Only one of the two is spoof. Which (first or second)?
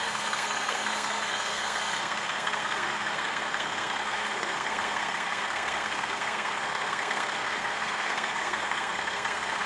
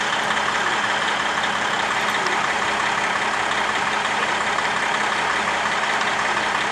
first